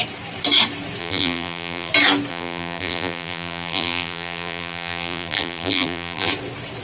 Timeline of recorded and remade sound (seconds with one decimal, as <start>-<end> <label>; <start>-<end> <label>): 0.0-1.0 recorded; 1.0-1.9 remade; 1.9-2.3 recorded; 2.3-6.3 remade; 6.3-6.8 recorded

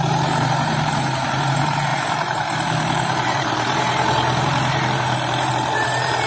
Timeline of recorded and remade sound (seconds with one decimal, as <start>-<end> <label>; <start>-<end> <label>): 0.0-6.3 remade

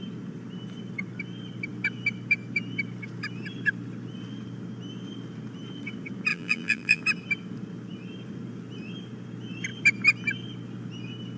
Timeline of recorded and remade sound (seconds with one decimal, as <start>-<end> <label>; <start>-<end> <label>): 0.0-6.3 recorded; 6.3-7.0 remade; 7.0-11.4 recorded

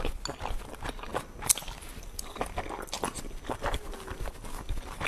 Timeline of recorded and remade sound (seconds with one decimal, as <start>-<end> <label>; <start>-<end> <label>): 0.0-5.1 recorded

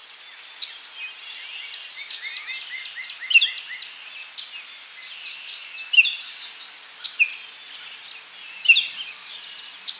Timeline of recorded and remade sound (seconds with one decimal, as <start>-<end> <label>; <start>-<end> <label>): 0.0-10.0 recorded